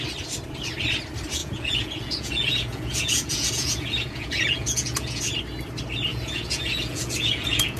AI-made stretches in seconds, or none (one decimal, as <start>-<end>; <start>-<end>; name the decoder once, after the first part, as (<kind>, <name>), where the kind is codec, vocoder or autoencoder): 1.4-5.2 (vocoder, Vocos); 6.1-7.8